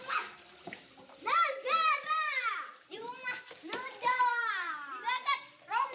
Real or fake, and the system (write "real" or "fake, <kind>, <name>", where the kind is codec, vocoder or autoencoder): fake, vocoder, BigVGAN v2